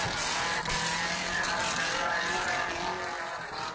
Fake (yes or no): no